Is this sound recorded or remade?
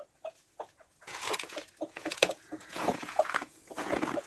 remade